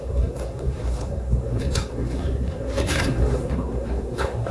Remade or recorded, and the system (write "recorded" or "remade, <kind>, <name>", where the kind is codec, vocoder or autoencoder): remade, codec, SNAC